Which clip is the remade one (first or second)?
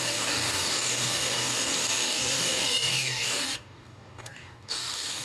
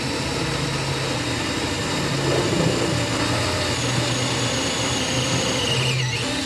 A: first